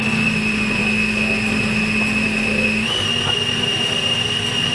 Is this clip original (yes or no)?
yes